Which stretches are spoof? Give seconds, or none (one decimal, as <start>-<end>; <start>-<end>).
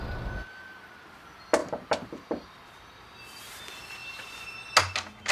1.6-3.6; 4.0-4.6